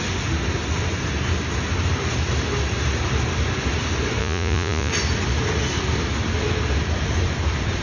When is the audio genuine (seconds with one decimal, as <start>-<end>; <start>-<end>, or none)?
0.0-4.2; 4.9-7.8